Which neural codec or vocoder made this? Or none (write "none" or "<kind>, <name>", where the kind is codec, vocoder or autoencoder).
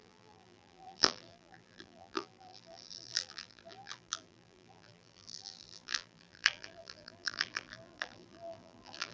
vocoder, BigVGAN v2